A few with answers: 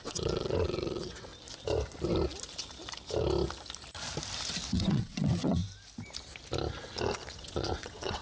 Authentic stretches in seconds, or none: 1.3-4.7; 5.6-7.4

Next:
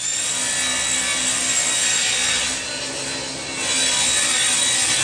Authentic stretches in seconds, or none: 0.0-5.0

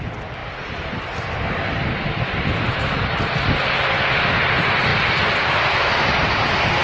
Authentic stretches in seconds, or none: 0.0-6.8

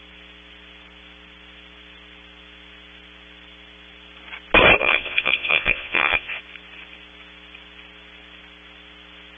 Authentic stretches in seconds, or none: 0.0-4.8; 6.4-9.4

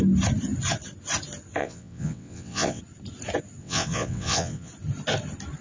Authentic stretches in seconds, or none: 0.0-1.6; 2.8-3.6; 4.7-5.6

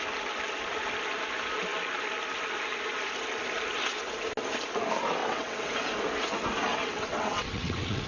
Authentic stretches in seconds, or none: 0.0-5.2; 5.7-6.7

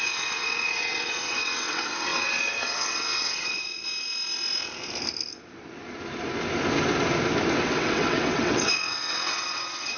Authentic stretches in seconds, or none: 3.8-7.6